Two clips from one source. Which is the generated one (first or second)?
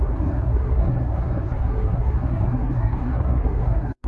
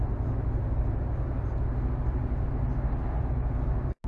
first